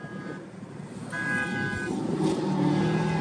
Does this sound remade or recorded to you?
recorded